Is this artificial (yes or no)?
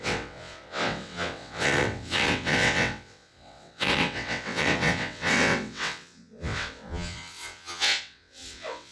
yes